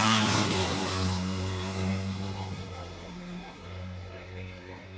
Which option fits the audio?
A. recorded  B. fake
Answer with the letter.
B